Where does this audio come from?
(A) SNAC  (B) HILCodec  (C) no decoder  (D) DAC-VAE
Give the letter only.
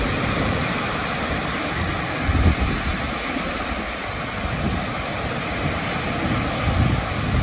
C